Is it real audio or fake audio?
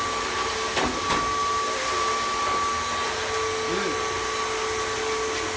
real